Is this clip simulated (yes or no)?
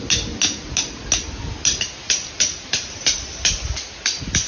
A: no